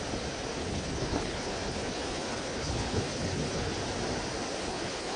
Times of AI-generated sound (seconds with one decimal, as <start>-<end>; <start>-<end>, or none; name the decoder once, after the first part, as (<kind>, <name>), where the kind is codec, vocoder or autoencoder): 0.6-3.7 (codec, HILCodec); 4.6-5.2

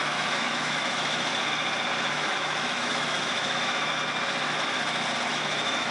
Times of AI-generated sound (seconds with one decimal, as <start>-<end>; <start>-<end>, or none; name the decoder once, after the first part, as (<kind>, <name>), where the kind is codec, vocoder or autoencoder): 0.0-1.3 (autoencoder, DAC-VAE); 2.1-3.9; 5.3-5.9

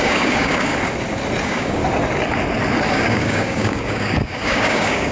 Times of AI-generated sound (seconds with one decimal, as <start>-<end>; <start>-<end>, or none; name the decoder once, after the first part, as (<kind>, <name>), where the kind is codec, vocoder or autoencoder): 0.0-0.7 (codec, DAC); 1.4-1.8; 2.9-5.1

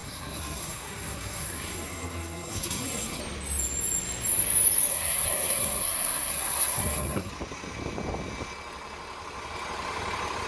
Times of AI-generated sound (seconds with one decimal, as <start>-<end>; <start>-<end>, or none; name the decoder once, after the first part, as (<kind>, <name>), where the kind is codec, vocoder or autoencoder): 0.0-3.2 (codec, SNAC); 4.9-7.3

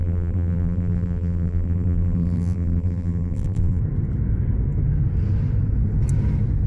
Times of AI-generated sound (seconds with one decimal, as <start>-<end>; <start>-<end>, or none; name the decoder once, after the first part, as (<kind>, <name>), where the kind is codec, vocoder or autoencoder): 0.0-3.8 (vocoder, BigVGAN v2)

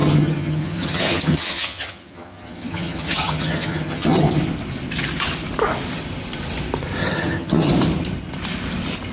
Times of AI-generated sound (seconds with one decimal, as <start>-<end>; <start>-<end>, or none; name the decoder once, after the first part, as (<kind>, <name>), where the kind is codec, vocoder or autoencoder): 0.0-4.4 (vocoder, HiFi-GAN); 7.0-7.7